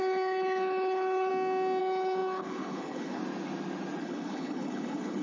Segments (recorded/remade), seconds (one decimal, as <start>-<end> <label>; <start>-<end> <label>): 0.0-1.3 remade; 1.3-1.8 recorded; 1.8-3.2 remade; 3.2-4.0 recorded; 4.0-5.2 remade

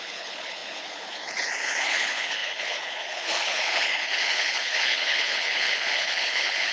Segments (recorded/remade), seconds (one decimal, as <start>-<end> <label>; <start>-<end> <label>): 0.0-6.7 remade

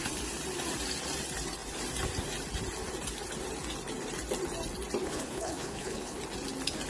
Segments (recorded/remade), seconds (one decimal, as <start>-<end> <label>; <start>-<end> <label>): 0.0-5.0 recorded; 5.0-6.2 remade; 6.2-6.9 recorded